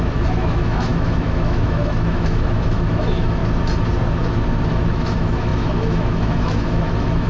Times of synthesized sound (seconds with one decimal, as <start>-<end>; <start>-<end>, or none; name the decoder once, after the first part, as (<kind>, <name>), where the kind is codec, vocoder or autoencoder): 0.0-3.4 (autoencoder, DAC-VAE); 4.7-7.3